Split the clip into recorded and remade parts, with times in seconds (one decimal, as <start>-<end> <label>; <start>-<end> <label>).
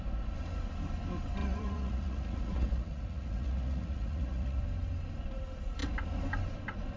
0.0-1.4 recorded; 1.4-4.6 remade; 4.6-7.0 recorded